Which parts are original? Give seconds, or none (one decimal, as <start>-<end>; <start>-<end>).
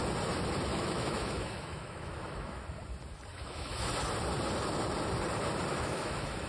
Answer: 0.0-0.7; 2.6-3.3; 3.9-5.7